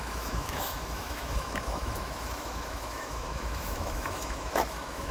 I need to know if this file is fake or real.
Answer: fake